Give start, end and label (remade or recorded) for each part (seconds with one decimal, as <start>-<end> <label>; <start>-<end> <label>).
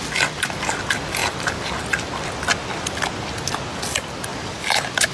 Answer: 0.0-5.1 recorded